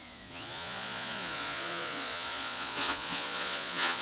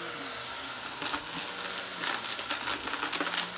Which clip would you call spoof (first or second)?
first